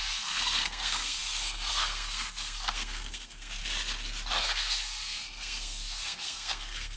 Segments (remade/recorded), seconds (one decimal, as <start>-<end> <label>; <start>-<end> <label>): 0.0-3.6 remade; 3.6-4.4 recorded; 4.4-7.0 remade